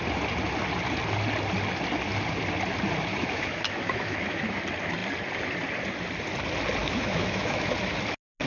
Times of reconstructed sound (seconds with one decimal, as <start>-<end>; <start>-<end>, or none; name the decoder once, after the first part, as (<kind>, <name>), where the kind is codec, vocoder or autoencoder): 3.1-4.4 (autoencoder, DAC-VAE); 6.8-7.7